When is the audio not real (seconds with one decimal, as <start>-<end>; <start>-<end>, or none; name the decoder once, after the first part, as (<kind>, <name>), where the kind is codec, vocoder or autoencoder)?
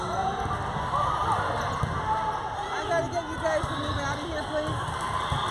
none